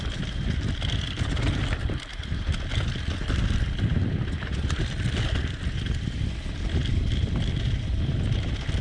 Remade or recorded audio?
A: recorded